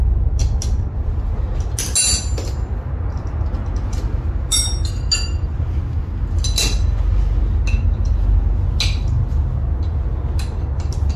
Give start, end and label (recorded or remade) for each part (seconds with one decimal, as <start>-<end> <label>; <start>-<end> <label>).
0.0-11.2 recorded